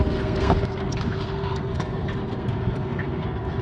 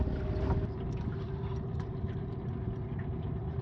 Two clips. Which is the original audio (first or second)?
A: second